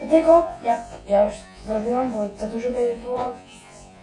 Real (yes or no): no